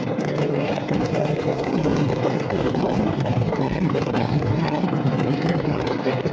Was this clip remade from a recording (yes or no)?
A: yes